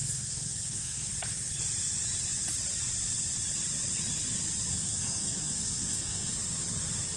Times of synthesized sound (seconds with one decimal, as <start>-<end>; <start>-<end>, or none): 0.0-1.1; 4.7-6.3